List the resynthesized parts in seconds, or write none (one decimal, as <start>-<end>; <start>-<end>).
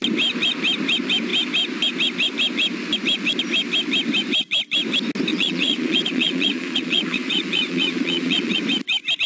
5.3-8.6